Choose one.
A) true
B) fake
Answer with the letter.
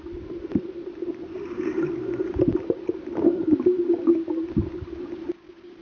A